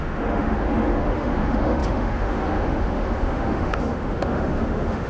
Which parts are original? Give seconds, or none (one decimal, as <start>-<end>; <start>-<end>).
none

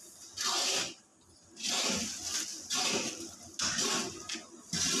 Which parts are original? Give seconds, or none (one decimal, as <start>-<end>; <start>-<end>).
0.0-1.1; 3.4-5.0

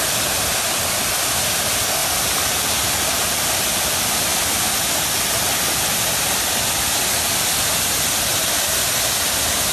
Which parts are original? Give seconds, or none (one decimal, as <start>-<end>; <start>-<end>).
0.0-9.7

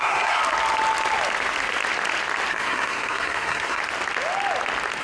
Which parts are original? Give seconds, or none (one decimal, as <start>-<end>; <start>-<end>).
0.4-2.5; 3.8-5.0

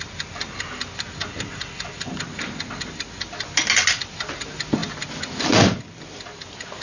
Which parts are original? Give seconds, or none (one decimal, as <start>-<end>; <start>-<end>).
0.0-6.8

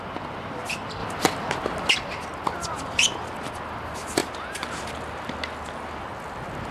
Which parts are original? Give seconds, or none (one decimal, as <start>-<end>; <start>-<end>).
0.0-6.7